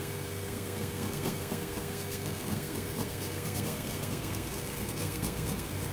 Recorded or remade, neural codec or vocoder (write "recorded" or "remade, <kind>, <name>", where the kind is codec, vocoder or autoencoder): remade, codec, SNAC